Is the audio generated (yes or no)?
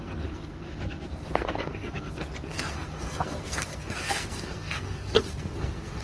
yes